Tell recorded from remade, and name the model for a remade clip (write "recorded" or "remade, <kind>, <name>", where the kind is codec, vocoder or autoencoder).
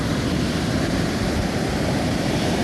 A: remade, vocoder, BigVGAN v2